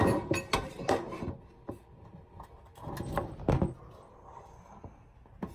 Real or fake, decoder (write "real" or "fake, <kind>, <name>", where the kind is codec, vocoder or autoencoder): real